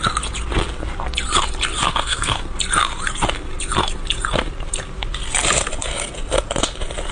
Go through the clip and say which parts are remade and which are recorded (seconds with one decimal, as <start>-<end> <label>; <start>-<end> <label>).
0.0-1.8 recorded; 1.8-2.4 remade; 2.4-7.1 recorded